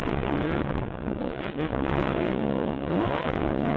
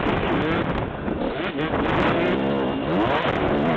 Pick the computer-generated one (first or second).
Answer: first